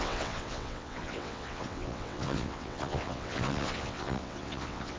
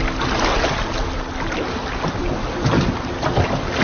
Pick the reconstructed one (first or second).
first